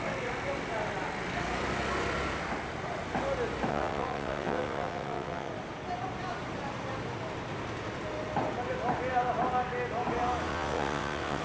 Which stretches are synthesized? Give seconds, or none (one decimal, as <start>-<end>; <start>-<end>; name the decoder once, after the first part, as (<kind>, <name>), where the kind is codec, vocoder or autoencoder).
3.7-5.5 (vocoder, WaveNeXt); 10.5-11.4